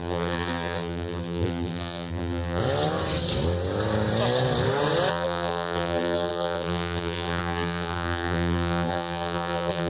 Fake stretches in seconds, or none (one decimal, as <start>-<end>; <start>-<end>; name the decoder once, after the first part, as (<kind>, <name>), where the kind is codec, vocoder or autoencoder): 0.0-2.6 (vocoder, BigVGAN v2); 5.1-9.9